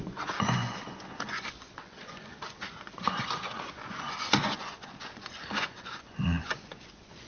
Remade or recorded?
remade